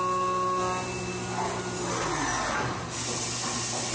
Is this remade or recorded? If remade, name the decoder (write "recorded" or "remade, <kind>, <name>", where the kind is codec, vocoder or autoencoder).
recorded